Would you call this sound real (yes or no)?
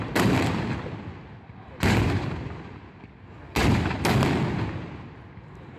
yes